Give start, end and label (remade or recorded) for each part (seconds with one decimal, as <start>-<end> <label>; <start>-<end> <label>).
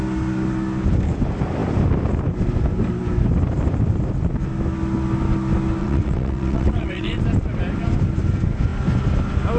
0.0-5.8 recorded; 5.8-7.2 remade; 7.2-9.6 recorded